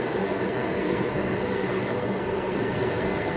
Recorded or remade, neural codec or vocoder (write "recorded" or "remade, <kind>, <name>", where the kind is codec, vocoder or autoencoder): remade, codec, SNAC